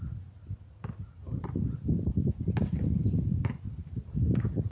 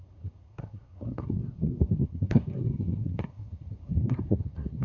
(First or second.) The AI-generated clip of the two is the second